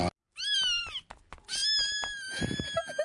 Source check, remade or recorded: recorded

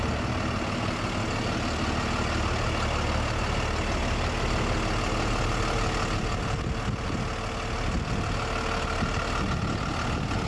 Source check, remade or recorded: recorded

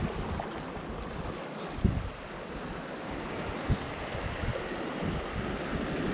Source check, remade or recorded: recorded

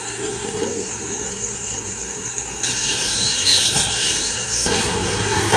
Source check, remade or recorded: remade